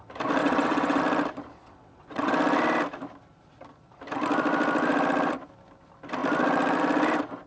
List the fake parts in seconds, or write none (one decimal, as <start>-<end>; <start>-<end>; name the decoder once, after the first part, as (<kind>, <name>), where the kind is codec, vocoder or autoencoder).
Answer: 0.4-1.0 (vocoder, WaveNeXt); 1.6-2.3